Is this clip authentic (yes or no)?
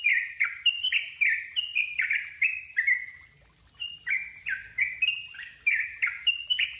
yes